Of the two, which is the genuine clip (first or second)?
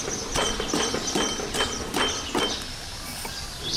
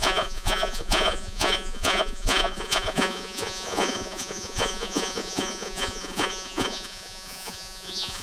first